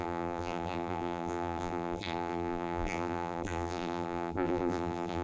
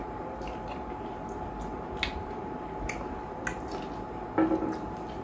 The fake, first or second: first